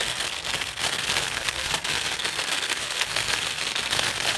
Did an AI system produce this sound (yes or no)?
yes